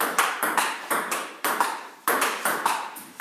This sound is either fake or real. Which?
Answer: fake